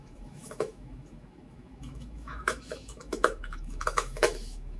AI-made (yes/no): yes